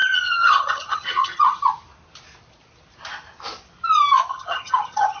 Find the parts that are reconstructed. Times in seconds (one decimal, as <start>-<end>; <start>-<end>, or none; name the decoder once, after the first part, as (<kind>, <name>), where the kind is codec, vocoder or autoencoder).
0.0-1.6 (vocoder, HiFi-GAN); 4.3-5.2